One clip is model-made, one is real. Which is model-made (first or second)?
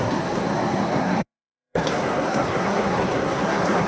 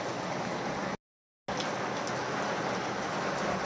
first